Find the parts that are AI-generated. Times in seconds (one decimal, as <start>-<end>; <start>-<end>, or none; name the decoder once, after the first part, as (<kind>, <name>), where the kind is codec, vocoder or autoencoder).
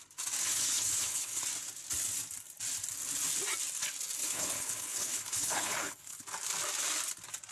0.4-1.4 (codec, HILCodec); 4.2-6.2